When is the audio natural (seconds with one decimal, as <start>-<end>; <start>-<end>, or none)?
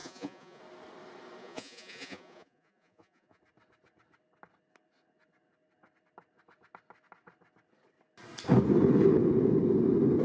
0.6-1.4; 3.4-10.2